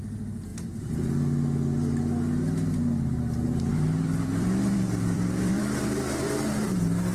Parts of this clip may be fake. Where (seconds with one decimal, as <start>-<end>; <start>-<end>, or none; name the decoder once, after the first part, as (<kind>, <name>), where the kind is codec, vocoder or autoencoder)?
3.7-5.6 (vocoder, BigVGAN v2)